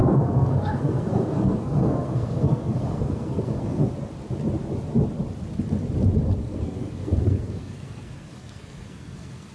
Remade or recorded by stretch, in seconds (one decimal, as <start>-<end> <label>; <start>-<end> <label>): 0.0-3.9 remade; 3.9-6.4 recorded; 6.4-9.5 remade